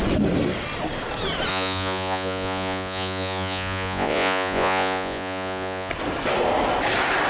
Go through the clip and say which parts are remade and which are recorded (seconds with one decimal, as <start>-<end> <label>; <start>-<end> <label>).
0.0-1.5 recorded; 1.5-5.9 remade; 5.9-7.3 recorded